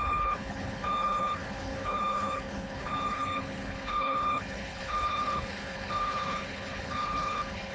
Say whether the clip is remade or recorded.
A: remade